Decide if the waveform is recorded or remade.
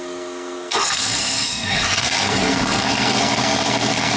remade